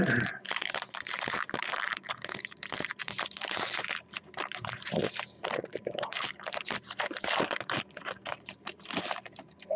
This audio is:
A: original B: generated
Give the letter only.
B